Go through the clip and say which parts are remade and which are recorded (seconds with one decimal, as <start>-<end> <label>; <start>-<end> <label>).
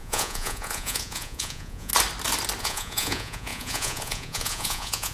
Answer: 0.0-1.9 remade; 1.9-2.6 recorded; 2.6-5.1 remade